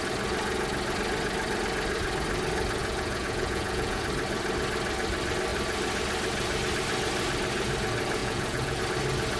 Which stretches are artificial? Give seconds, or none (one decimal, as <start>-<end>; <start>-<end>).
2.8-4.0; 8.2-8.8